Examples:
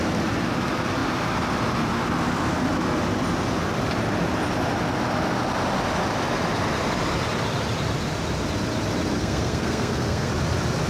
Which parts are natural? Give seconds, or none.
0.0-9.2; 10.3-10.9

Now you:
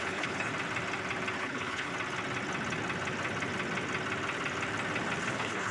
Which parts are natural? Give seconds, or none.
0.5-1.4; 1.9-5.3

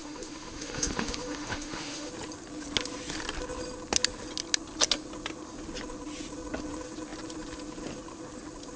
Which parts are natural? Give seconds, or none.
2.1-8.8

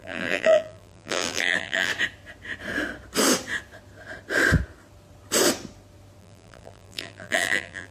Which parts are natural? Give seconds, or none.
1.9-6.2

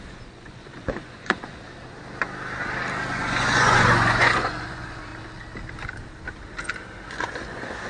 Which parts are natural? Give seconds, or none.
1.7-3.1; 5.1-7.1